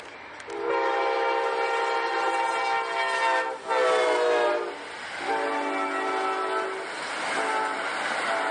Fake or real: real